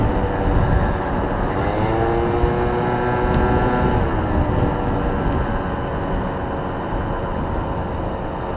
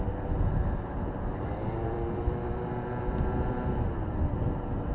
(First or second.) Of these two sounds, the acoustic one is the first